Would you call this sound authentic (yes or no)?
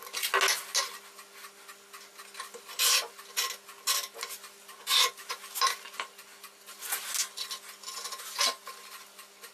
yes